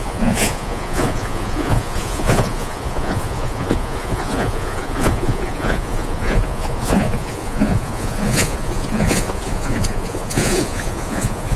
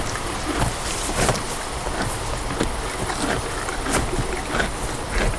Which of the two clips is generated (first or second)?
first